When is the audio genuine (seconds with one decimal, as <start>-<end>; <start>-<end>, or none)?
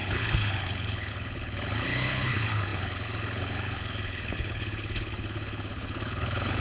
none